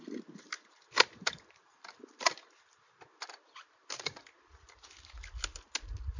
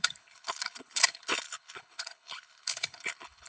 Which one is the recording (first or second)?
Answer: first